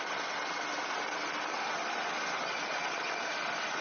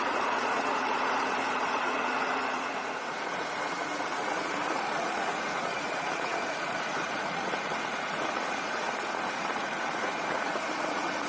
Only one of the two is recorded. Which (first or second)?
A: first